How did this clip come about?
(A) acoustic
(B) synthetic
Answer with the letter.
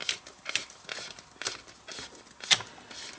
A